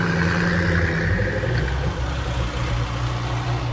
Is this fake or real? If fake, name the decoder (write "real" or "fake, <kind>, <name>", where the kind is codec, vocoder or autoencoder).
real